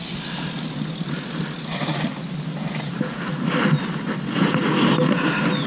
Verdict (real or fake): real